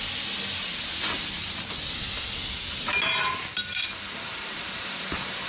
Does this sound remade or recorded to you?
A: recorded